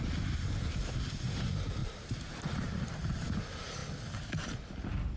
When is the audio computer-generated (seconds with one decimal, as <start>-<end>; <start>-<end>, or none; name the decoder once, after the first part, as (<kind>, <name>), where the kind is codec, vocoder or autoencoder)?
1.8-3.4 (vocoder, BigVGAN v2)